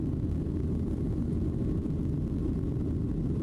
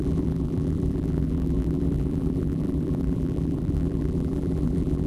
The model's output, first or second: second